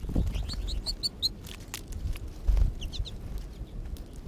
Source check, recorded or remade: recorded